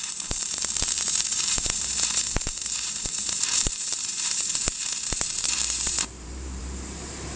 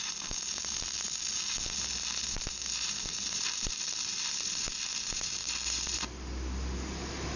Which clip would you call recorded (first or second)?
second